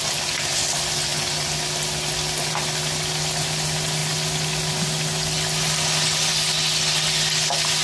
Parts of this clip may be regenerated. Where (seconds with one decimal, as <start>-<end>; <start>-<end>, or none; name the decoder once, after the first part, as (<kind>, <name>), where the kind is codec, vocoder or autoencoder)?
none